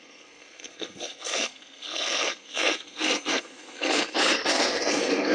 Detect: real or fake fake